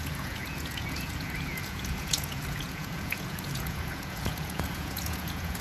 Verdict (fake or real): fake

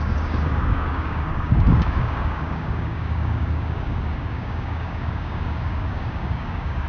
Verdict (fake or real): fake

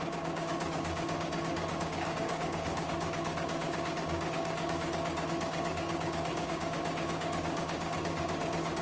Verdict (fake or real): fake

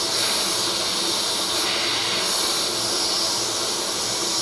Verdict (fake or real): real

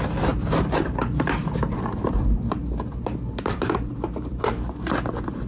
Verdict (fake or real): fake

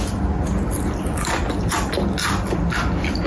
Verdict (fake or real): real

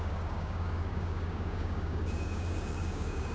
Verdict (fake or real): fake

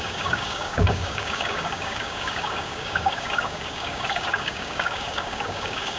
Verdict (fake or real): fake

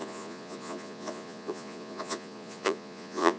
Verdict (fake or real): fake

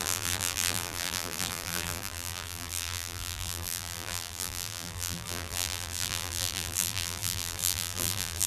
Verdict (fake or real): fake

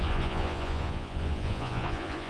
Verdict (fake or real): fake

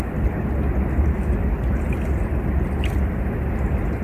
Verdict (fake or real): real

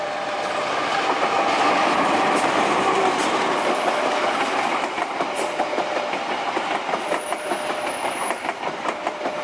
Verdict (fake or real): fake